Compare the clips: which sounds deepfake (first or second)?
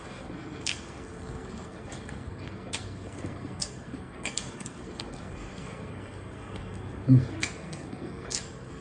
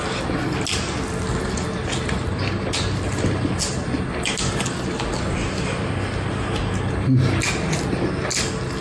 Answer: first